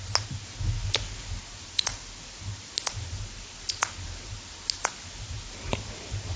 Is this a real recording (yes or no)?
yes